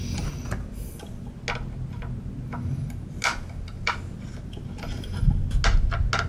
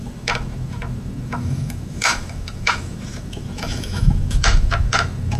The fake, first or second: second